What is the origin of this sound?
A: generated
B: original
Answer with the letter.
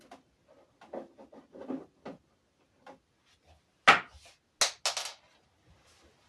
B